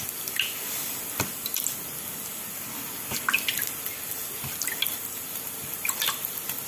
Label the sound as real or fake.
real